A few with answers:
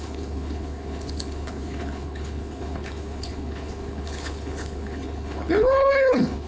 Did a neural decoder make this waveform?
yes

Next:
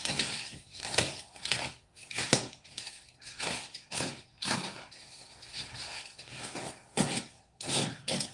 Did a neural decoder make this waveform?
yes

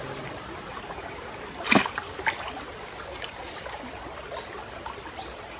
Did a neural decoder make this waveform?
yes